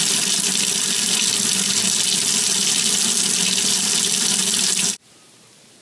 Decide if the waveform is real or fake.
real